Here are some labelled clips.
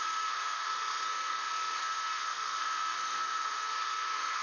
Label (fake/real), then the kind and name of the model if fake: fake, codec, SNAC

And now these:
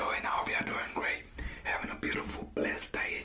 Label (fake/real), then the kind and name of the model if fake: real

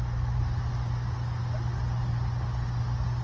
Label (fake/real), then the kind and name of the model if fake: real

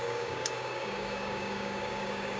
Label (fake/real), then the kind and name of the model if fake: fake, codec, DAC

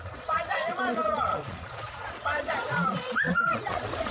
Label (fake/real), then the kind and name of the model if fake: fake, vocoder, Vocos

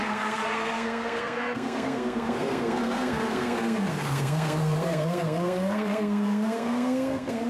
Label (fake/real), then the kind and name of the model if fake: fake, codec, SNAC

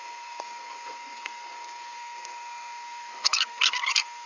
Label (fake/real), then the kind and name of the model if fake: fake, codec, SNAC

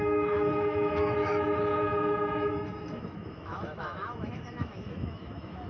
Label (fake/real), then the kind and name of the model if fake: fake, autoencoder, DAC-VAE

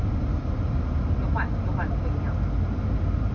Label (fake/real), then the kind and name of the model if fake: real